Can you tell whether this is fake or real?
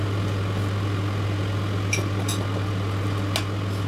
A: real